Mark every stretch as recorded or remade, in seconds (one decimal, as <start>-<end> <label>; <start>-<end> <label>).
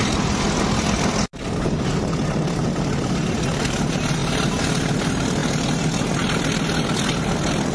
0.0-7.7 recorded